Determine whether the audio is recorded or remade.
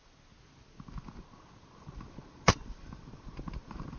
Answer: recorded